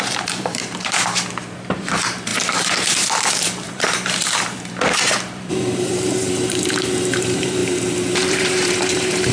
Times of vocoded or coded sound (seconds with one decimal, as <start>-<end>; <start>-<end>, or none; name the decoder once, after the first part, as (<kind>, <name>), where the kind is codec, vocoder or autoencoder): 0.0-9.3 (vocoder, BigVGAN v2)